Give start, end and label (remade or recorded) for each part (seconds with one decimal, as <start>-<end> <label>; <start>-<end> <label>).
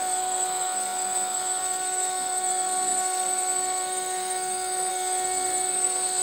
0.0-6.2 remade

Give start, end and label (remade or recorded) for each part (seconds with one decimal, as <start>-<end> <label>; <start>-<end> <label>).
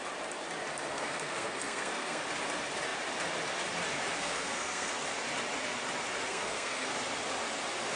0.0-0.9 recorded; 0.9-2.2 remade; 2.2-4.2 recorded; 4.2-4.9 remade; 4.9-6.3 recorded; 6.3-6.9 remade; 6.9-8.0 recorded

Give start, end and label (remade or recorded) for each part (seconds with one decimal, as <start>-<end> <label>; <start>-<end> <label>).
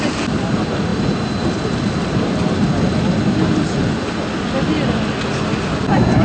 0.0-6.2 recorded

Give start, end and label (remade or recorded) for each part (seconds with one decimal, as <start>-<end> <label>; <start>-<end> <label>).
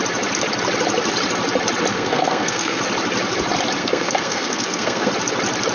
0.0-1.9 recorded; 1.9-2.8 remade; 2.8-3.8 recorded; 3.8-5.1 remade; 5.1-5.7 recorded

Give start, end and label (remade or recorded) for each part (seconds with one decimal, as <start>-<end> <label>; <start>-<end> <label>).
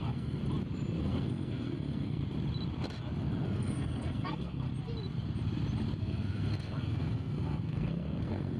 0.0-0.4 remade; 0.4-1.0 recorded; 1.0-2.2 remade; 2.2-3.2 recorded; 3.2-4.7 remade; 4.7-6.0 recorded; 6.0-8.6 remade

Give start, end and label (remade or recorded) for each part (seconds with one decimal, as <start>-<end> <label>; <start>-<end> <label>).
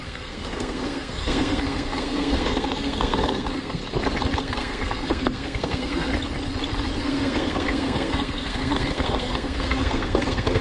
0.0-3.8 remade; 3.8-4.4 recorded; 4.4-6.1 remade; 6.1-7.0 recorded; 7.0-10.6 remade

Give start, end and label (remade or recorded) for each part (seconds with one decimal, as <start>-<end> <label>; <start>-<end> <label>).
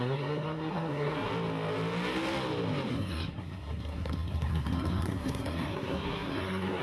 0.0-1.3 remade; 1.3-2.9 recorded; 2.9-6.8 remade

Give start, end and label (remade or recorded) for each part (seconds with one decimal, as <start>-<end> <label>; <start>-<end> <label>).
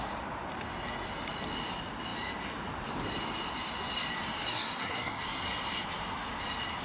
0.0-4.5 recorded; 4.5-5.2 remade; 5.2-6.8 recorded